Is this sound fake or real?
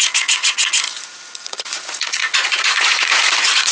fake